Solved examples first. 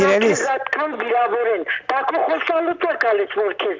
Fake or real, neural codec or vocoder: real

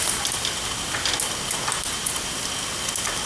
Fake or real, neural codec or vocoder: real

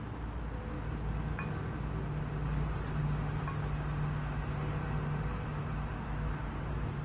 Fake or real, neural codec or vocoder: real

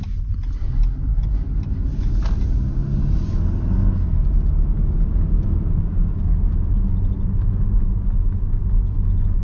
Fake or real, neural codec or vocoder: real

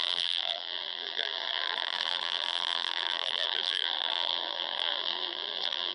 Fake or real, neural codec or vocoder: fake, vocoder, BigVGAN v2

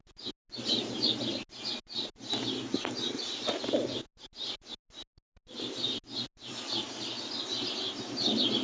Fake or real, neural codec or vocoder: real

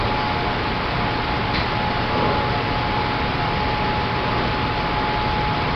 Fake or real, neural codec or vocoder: real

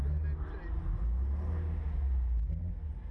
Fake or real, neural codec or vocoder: real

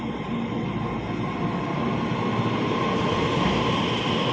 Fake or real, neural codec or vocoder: real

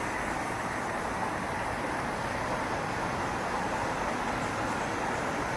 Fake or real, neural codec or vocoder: real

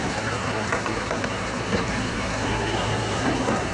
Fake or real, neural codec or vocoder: fake, codec, SNAC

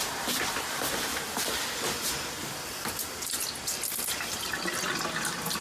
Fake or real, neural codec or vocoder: real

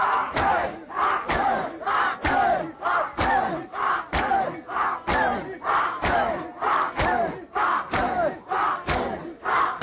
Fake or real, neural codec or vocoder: real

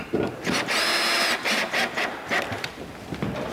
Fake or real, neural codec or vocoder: real